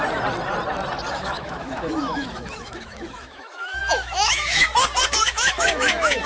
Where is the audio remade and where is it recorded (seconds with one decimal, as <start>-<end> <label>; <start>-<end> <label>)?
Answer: 0.0-1.1 recorded; 1.1-4.7 remade; 4.7-5.2 recorded; 5.2-6.3 remade